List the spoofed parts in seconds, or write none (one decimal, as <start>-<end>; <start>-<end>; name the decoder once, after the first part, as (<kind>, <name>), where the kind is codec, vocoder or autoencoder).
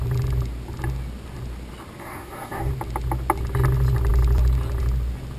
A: 2.0-2.7 (codec, DAC)